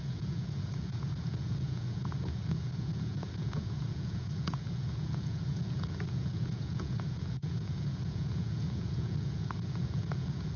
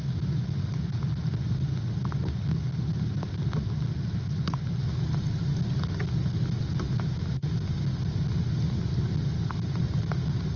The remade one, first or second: first